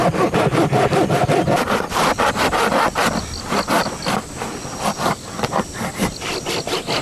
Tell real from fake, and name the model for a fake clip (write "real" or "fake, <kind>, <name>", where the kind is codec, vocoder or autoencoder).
fake, vocoder, BigVGAN v2